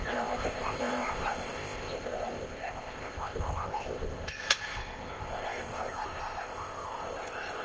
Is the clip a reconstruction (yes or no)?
yes